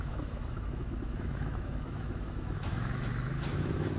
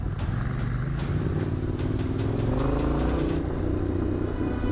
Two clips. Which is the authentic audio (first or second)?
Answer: second